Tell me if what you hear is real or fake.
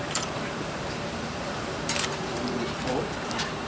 fake